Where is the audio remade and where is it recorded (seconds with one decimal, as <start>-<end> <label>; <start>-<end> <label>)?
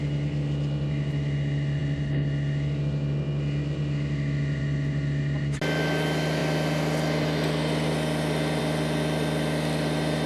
0.0-10.3 recorded